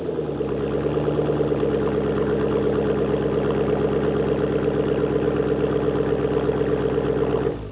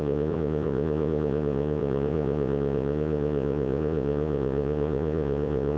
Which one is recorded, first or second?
first